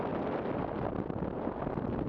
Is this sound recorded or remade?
recorded